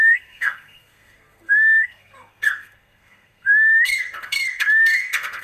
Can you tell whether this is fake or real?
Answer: fake